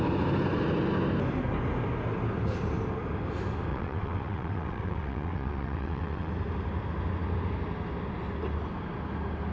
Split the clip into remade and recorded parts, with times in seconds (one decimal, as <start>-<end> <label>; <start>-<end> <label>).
0.0-3.7 recorded; 3.7-6.3 remade; 6.3-9.5 recorded